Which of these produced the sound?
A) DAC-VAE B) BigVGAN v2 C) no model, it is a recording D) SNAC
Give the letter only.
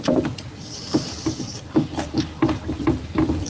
B